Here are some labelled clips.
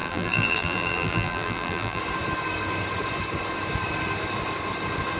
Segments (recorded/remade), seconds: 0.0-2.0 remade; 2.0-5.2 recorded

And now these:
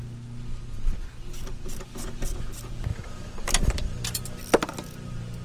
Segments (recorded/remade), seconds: 0.0-2.9 recorded; 2.9-4.2 remade; 4.2-5.4 recorded

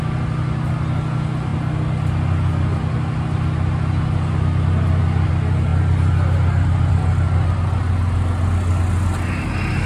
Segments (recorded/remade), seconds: 0.0-9.9 recorded

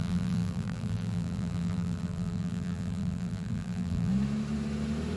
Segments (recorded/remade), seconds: 0.0-4.1 remade; 4.1-5.2 recorded

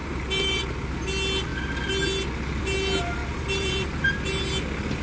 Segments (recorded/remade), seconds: 0.0-0.6 remade; 0.6-3.2 recorded; 3.2-4.1 remade; 4.1-5.0 recorded

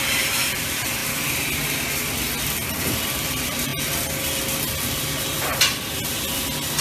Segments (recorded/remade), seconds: 0.0-1.0 remade; 1.0-2.8 recorded; 2.8-3.7 remade; 3.7-5.0 recorded; 5.0-5.5 remade; 5.5-6.8 recorded

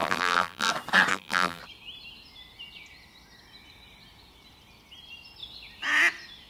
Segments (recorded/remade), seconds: 0.0-0.7 remade; 0.7-1.1 recorded; 1.1-1.6 remade; 1.6-6.5 recorded